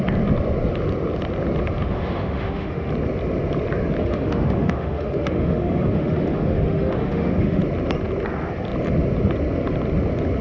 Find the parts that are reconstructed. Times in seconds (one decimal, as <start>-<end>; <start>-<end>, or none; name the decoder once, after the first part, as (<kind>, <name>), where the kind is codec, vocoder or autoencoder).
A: 1.8-2.9 (autoencoder, DAC-VAE); 4.0-7.6